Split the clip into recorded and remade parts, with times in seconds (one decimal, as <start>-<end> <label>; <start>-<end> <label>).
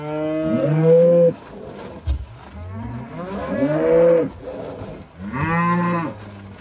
0.0-0.6 recorded; 0.6-1.3 remade; 1.3-6.6 recorded